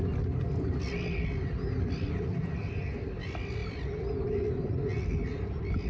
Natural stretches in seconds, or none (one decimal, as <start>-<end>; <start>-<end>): 0.0-5.9